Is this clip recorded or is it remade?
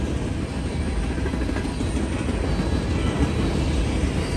recorded